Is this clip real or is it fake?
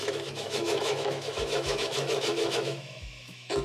fake